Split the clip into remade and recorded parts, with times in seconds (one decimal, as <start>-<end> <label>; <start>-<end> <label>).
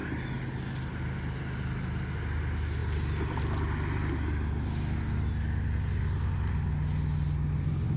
0.0-8.0 recorded